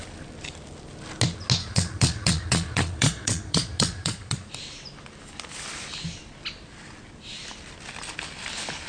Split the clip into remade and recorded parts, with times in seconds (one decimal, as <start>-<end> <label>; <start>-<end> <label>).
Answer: 0.0-1.6 recorded; 1.6-4.5 remade; 4.5-8.9 recorded